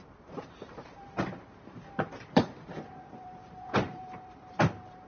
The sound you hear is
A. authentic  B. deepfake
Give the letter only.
B